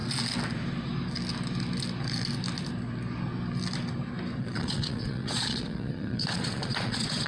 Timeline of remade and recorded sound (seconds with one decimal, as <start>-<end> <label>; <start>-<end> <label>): 0.0-4.4 recorded; 4.4-7.3 remade